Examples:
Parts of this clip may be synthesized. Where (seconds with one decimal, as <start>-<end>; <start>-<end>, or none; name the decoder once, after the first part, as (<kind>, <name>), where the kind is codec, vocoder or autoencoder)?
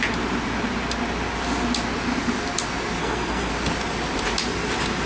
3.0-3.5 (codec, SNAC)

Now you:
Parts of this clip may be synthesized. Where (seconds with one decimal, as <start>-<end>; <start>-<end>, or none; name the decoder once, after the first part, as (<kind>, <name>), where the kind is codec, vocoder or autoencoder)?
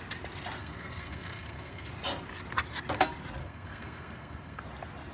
0.6-1.9 (codec, SNAC); 3.4-4.6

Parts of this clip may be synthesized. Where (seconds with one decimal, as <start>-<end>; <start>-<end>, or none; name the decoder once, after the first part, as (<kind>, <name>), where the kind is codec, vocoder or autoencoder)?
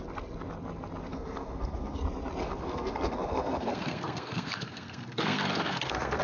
1.1-2.0 (codec, SNAC); 2.4-6.2